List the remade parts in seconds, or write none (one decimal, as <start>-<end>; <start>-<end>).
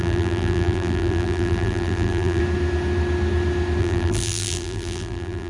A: 0.0-2.4; 3.8-5.5